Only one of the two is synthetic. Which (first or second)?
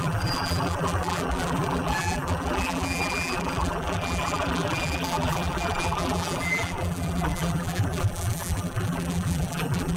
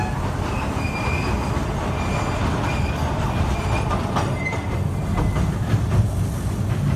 first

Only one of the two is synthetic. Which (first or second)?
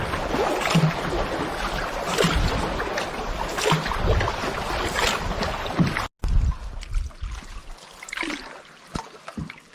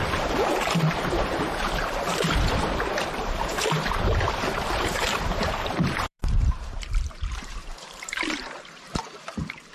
second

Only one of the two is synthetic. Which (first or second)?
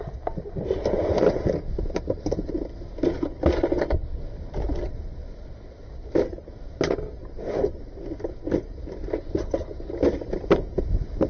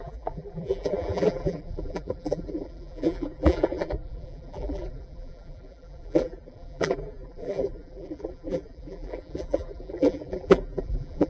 second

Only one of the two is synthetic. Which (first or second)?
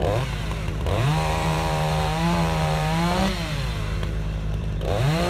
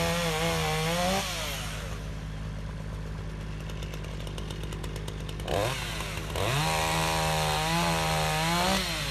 first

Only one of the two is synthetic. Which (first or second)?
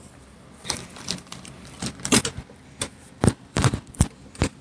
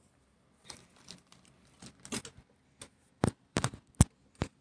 first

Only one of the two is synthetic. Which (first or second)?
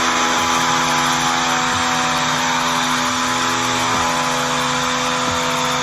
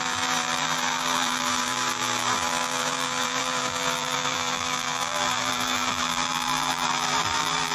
second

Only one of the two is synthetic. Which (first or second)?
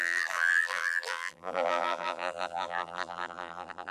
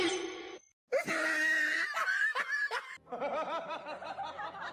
first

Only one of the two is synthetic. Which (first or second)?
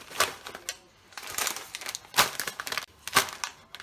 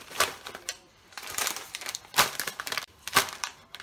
second